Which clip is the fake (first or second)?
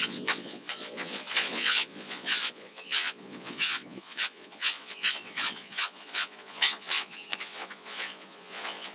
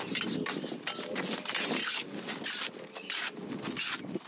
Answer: first